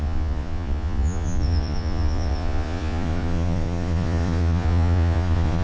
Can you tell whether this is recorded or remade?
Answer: remade